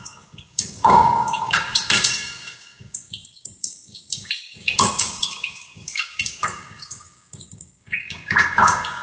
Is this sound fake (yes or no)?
yes